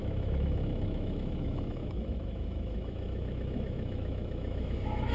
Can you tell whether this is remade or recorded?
remade